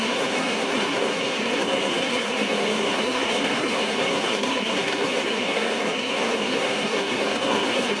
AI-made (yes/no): yes